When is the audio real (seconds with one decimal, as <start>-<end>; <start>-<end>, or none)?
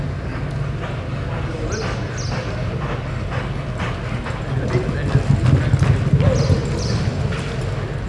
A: 0.0-8.1